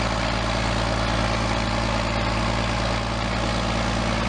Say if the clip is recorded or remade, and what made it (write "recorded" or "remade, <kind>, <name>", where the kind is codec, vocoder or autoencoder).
recorded